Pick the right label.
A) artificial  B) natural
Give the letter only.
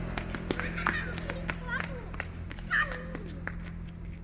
B